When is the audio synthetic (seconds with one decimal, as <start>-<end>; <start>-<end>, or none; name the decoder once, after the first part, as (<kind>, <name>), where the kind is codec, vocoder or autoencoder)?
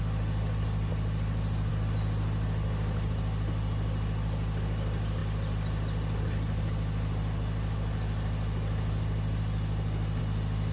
none